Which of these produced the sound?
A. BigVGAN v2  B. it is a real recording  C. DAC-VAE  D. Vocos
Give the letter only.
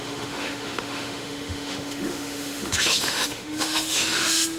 C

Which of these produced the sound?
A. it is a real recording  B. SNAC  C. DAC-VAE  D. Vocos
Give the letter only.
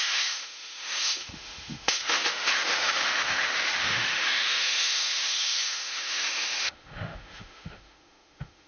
C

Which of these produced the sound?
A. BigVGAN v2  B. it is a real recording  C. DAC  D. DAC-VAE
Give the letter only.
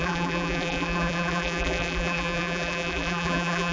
A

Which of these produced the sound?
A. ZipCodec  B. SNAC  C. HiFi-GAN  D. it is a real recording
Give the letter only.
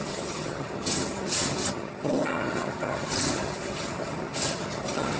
C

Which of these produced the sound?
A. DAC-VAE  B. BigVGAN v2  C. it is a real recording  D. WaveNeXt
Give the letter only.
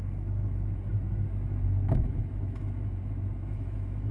A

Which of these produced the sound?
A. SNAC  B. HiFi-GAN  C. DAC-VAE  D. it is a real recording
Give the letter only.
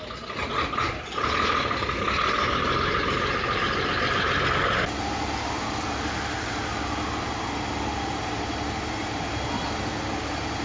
D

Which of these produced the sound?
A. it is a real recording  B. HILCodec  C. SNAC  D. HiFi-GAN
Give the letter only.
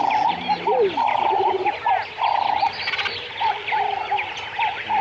A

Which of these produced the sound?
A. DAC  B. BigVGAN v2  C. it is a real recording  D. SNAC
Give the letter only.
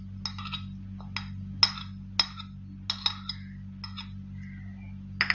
C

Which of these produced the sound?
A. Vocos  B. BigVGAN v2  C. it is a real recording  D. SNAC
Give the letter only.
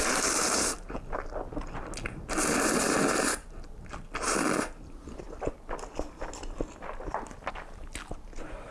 C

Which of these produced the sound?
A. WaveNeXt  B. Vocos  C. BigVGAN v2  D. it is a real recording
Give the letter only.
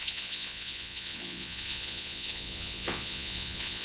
B